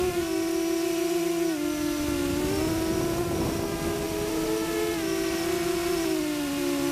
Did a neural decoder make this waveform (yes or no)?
no